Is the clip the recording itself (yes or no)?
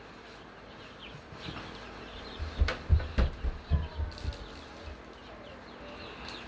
yes